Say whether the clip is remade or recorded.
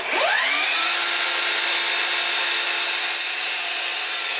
recorded